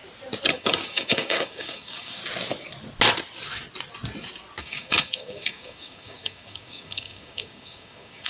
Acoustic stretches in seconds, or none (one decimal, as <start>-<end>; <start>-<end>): 0.0-0.5; 2.2-4.6